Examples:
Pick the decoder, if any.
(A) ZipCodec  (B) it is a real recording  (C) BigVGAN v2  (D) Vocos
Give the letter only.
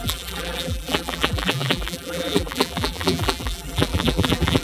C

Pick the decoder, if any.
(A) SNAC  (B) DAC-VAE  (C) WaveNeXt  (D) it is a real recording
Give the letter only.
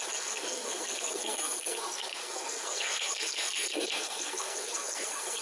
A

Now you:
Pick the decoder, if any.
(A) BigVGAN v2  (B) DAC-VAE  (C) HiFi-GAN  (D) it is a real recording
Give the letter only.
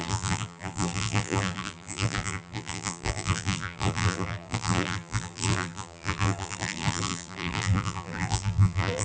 A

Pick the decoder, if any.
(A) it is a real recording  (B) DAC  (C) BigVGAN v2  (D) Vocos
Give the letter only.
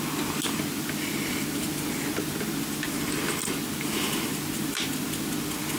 A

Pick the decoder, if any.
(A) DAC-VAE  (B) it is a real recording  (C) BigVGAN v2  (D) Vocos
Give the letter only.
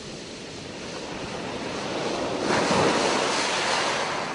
B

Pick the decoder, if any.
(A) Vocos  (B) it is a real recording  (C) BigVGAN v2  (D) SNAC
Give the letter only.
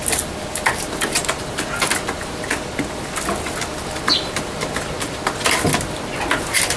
B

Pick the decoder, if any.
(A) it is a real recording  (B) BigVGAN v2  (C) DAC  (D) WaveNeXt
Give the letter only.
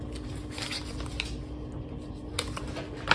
A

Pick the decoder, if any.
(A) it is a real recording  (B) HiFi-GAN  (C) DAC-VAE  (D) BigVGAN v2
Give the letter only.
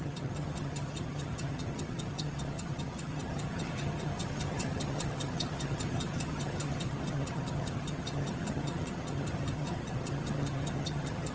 B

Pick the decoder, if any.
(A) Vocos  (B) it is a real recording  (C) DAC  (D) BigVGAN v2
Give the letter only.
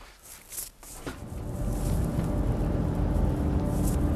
B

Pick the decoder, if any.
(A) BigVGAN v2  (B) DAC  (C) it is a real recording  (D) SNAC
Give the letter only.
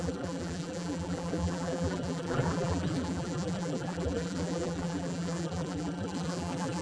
A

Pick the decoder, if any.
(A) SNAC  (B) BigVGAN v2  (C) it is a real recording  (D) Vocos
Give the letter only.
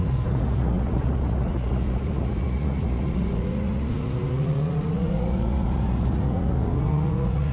D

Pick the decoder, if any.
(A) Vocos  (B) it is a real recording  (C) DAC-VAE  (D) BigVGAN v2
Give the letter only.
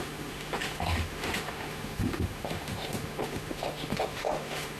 C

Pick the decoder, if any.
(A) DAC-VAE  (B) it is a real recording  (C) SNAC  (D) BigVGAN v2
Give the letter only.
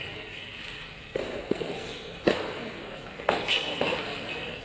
C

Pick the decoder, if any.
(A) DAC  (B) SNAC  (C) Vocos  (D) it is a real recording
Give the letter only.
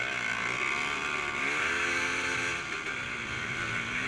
D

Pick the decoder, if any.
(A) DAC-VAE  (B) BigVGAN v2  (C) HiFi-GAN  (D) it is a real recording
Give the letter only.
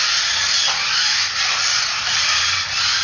D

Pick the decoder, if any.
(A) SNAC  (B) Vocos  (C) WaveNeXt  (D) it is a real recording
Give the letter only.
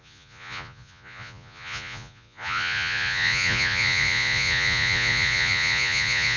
B